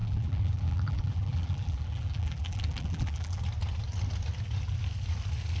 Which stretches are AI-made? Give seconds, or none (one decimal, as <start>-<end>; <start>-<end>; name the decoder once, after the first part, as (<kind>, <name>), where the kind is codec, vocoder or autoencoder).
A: 0.0-3.4 (vocoder, BigVGAN v2)